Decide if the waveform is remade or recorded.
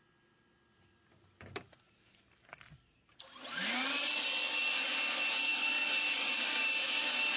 recorded